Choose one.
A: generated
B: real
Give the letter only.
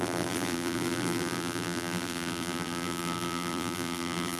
A